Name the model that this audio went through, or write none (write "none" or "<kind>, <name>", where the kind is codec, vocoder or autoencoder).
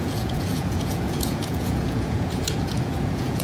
vocoder, Vocos